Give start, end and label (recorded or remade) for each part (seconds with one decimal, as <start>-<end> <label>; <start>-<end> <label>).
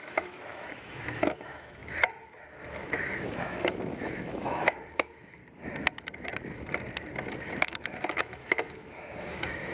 0.0-1.8 remade; 1.8-3.2 recorded; 3.2-5.4 remade; 5.4-7.6 recorded; 7.6-9.7 remade